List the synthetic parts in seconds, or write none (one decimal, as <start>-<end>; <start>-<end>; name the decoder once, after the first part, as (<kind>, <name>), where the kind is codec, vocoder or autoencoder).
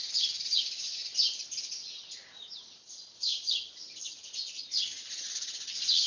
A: none